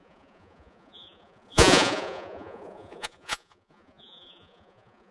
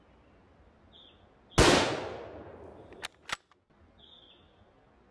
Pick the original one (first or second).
second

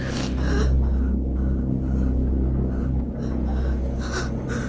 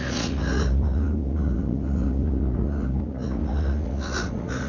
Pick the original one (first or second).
first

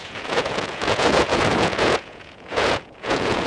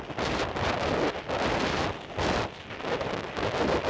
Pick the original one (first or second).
second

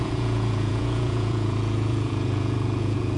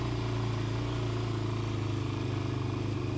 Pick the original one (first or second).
second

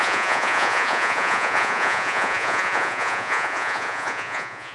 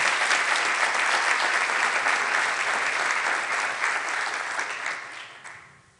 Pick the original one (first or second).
second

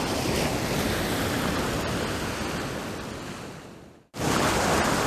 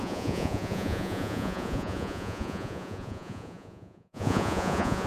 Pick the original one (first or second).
first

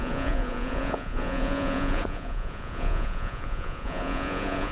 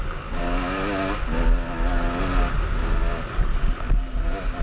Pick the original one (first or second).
second